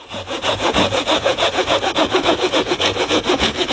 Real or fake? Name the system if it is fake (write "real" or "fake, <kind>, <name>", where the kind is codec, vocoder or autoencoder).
fake, vocoder, Vocos